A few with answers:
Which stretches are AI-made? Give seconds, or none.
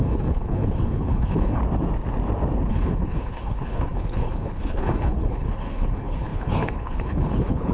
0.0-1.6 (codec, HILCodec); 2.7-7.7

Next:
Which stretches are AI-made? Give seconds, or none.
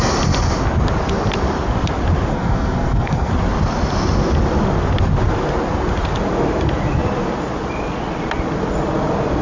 2.3-3.3 (codec, SNAC)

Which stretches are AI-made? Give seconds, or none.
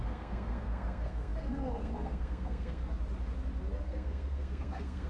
0.0-2.8 (codec, SNAC); 3.8-5.1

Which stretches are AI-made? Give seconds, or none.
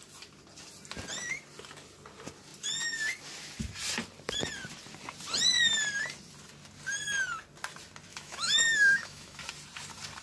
8.1-9.4 (autoencoder, DAC-VAE)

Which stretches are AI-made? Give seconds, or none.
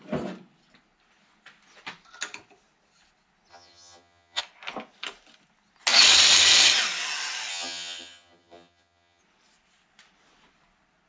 3.5-4.4 (vocoder, HiFi-GAN); 7.5-9.2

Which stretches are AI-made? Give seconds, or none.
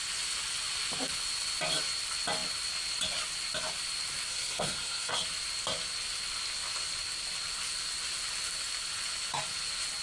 4.3-5.1 (codec, SNAC)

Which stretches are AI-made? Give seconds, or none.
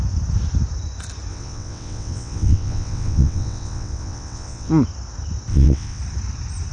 1.3-4.7 (vocoder, WaveNeXt); 5.5-6.0